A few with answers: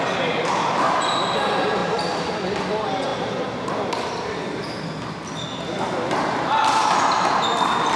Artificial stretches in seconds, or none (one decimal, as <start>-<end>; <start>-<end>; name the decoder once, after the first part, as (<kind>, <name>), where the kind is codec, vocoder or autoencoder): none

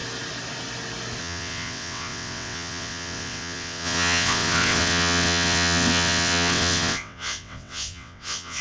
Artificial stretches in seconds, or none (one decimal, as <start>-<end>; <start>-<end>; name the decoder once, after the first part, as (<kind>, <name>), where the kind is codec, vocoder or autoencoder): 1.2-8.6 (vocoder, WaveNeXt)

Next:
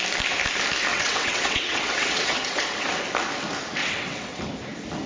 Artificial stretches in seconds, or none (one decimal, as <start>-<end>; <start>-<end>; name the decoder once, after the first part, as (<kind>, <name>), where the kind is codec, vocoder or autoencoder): 0.9-3.0 (vocoder, WaveNeXt); 3.8-4.4